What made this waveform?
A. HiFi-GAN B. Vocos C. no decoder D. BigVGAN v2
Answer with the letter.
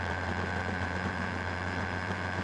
D